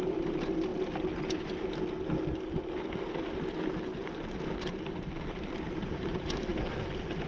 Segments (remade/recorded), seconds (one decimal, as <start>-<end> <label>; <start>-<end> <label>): 0.0-0.7 remade; 0.7-4.0 recorded; 4.0-6.5 remade; 6.5-7.3 recorded